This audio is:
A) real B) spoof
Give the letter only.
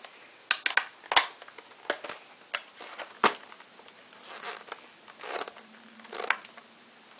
A